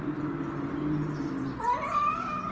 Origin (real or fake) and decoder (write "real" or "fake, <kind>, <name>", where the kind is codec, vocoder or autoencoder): real